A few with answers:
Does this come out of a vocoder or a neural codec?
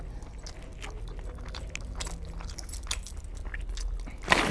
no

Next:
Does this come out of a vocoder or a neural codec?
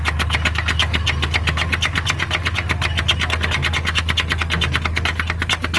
no